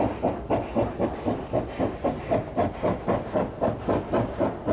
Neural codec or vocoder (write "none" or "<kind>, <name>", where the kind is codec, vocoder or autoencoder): none